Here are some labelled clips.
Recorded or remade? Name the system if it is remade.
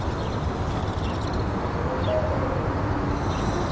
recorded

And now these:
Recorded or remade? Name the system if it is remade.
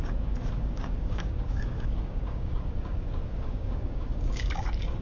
remade, codec, DAC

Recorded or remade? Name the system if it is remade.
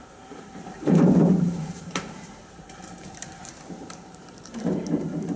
remade, vocoder, BigVGAN v2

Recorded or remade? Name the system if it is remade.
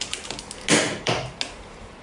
recorded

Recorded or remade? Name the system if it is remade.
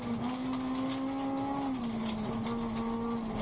recorded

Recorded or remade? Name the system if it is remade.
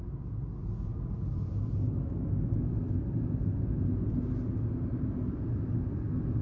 recorded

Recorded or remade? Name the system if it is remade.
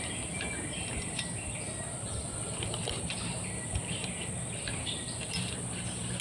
remade, vocoder, BigVGAN v2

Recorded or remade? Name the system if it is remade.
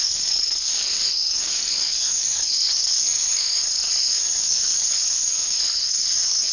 remade, codec, SNAC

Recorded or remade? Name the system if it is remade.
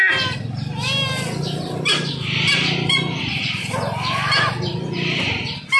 recorded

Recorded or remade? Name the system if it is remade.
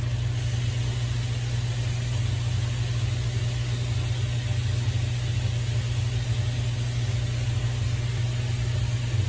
recorded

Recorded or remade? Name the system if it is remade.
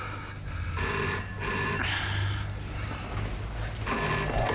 recorded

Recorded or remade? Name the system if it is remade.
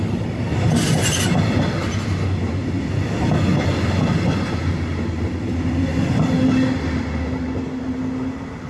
recorded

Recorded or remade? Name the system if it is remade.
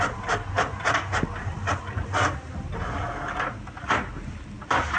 recorded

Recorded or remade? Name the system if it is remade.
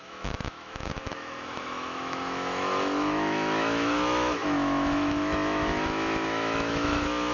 remade, autoencoder, DAC-VAE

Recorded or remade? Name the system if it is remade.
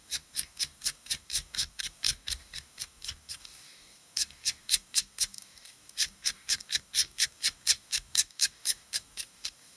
remade, codec, DAC